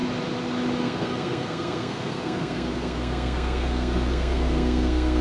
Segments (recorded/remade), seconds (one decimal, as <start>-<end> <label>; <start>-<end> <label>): 0.0-0.8 recorded; 0.8-5.2 remade